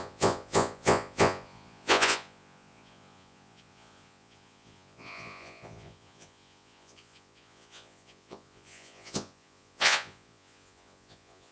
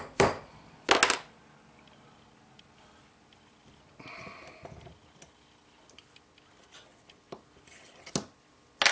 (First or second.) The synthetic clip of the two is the first